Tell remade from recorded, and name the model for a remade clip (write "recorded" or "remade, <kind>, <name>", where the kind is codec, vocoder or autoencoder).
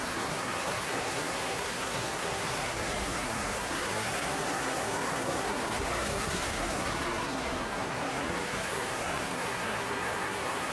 remade, codec, SNAC